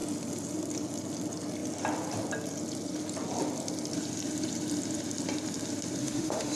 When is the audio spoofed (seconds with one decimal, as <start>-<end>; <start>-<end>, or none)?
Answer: 6.0-6.6